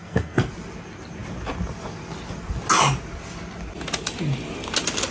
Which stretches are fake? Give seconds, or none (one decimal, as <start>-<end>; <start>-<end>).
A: 0.0-0.5